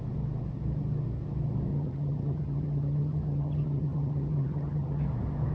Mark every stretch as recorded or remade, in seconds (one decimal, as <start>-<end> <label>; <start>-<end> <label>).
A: 0.0-1.7 recorded; 1.7-5.0 remade; 5.0-5.5 recorded